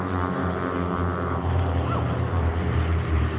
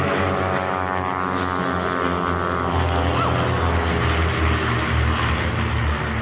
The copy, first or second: first